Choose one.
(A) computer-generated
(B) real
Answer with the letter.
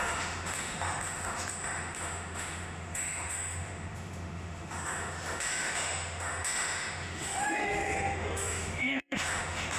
A